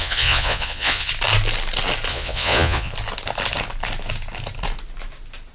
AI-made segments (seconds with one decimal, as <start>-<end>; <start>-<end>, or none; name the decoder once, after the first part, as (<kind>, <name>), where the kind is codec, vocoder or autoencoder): 0.0-1.1 (vocoder, Vocos); 2.1-2.9

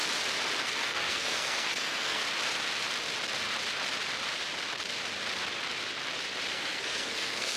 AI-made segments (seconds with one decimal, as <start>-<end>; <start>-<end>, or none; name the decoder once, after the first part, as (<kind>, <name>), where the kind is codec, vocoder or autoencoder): 0.6-2.2 (codec, SNAC); 6.5-7.6

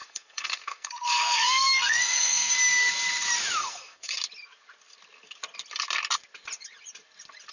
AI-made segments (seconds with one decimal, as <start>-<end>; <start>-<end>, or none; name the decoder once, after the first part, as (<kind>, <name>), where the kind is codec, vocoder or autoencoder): 0.0-2.5 (codec, SNAC); 3.6-4.1

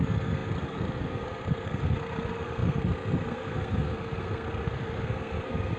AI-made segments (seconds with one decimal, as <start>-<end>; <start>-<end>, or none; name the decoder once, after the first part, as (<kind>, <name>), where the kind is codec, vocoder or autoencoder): 0.0-5.8 (codec, SNAC)

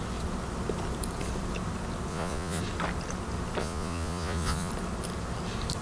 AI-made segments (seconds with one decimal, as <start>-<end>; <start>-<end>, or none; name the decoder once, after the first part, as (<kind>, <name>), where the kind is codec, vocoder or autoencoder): 2.1-2.6 (vocoder, Vocos); 3.6-4.7

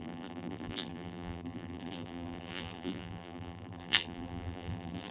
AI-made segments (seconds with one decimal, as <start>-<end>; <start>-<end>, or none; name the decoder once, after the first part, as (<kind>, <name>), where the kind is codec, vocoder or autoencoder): 0.0-5.1 (vocoder, BigVGAN v2)

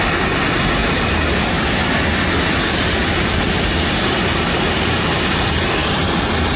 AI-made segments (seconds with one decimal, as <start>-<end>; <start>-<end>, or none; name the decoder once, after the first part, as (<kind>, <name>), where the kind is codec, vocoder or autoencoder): none

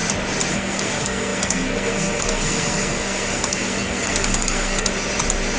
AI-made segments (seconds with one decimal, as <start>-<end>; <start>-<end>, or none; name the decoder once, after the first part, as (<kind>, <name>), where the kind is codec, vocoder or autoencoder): 0.5-4.9 (codec, SNAC)